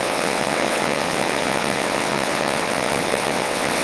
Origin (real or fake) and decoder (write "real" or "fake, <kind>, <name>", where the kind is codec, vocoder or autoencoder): fake, vocoder, WaveNeXt